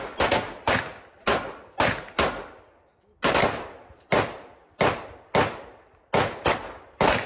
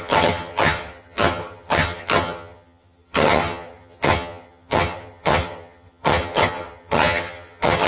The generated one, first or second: second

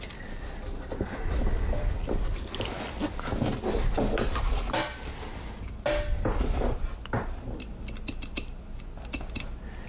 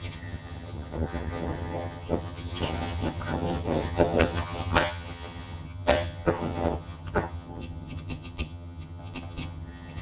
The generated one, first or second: second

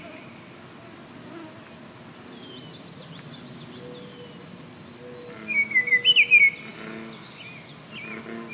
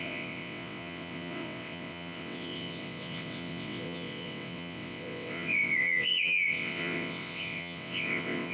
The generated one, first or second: second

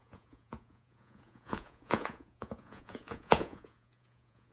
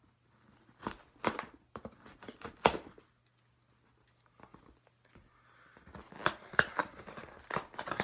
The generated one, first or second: first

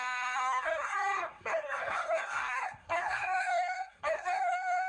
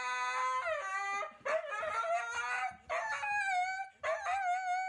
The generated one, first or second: first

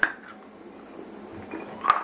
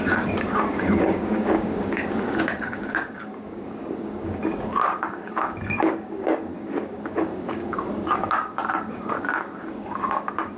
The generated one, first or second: second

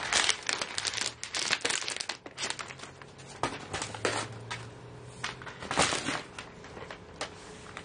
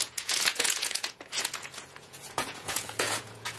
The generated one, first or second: second